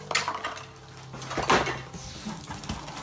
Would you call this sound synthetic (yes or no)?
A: no